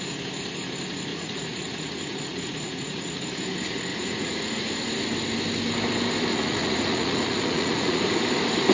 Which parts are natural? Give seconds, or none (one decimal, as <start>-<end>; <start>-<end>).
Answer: 0.0-1.1; 3.2-3.9; 4.8-6.3; 8.0-8.7